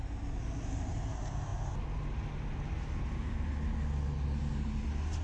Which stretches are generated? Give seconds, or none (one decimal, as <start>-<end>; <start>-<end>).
none